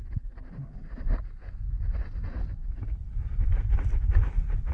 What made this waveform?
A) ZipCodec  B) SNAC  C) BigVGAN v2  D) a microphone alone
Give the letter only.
D